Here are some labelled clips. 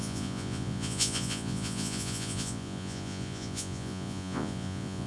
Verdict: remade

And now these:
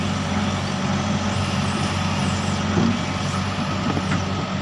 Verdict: recorded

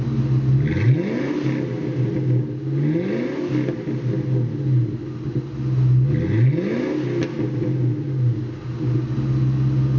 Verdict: recorded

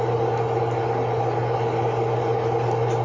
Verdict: recorded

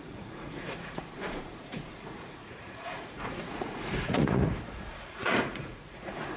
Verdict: remade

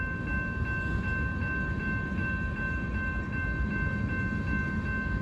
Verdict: recorded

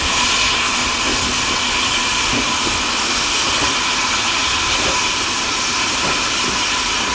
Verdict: recorded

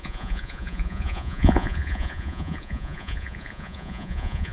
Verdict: remade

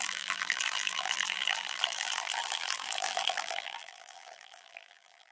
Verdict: remade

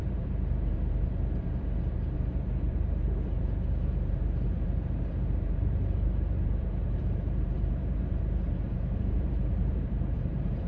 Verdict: remade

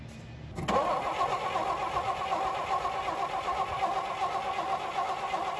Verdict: recorded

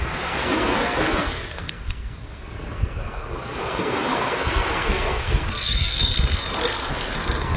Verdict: remade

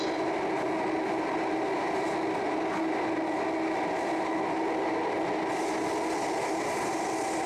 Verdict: recorded